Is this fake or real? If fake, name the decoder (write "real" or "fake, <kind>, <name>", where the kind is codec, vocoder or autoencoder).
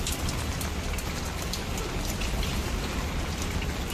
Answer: real